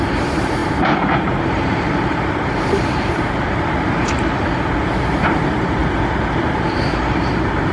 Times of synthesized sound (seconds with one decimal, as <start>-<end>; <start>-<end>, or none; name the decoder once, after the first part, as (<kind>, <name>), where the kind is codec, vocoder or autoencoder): 0.0-5.8 (vocoder, BigVGAN v2); 6.6-7.7